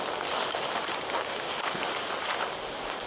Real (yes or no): yes